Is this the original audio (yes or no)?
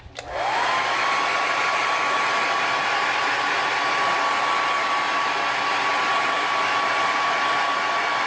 no